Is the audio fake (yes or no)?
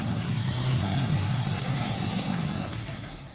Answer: yes